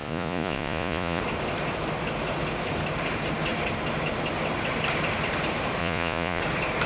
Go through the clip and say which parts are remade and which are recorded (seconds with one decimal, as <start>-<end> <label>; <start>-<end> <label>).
0.0-1.2 remade; 1.2-5.8 recorded; 5.8-6.4 remade; 6.4-6.9 recorded